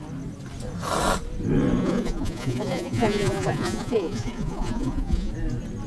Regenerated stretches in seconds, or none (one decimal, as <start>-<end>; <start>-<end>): 1.8-5.3